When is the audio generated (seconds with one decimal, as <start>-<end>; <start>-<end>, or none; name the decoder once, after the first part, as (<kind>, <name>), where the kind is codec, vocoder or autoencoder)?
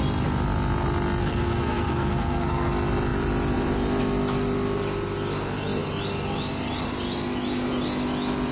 1.2-2.7 (codec, SNAC)